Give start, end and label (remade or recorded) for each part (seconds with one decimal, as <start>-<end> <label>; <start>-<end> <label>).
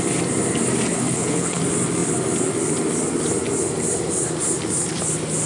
0.0-0.9 recorded; 0.9-1.6 remade; 1.6-5.5 recorded